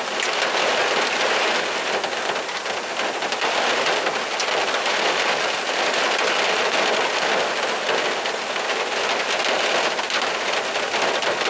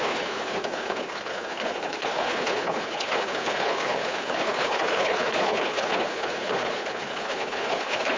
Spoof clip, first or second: second